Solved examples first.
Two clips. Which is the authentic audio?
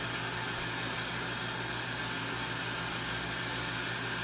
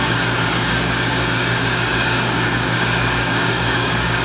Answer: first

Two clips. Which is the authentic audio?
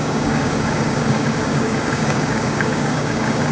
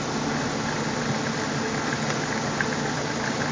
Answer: second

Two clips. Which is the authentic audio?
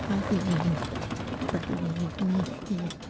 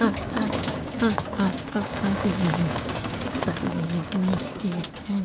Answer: first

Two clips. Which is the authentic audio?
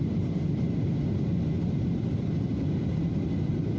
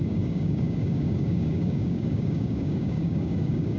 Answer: first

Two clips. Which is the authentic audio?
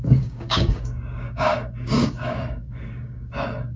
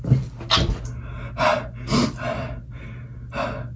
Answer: second